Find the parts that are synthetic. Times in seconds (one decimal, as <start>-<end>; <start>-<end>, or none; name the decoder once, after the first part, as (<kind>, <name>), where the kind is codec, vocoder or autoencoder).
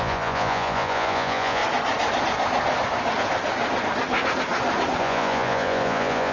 0.0-1.6 (vocoder, Vocos); 5.0-6.3